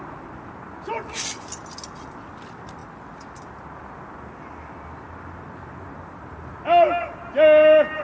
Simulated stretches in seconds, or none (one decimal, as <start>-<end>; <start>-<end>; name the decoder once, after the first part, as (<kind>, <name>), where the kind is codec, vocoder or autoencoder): none